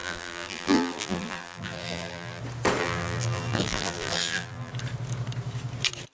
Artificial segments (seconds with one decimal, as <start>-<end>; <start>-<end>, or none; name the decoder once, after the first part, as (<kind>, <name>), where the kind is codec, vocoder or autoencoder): 0.0-2.4 (vocoder, BigVGAN v2); 2.8-4.7